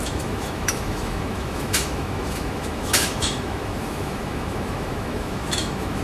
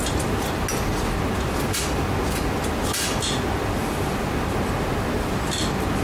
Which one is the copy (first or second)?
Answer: first